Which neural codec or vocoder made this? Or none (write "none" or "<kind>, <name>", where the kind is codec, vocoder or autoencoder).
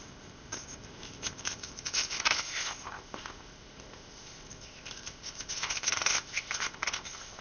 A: codec, ZipCodec